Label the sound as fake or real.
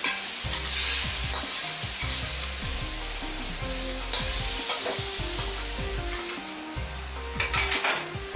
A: real